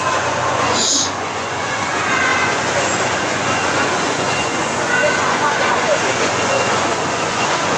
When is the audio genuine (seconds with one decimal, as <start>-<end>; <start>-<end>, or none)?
none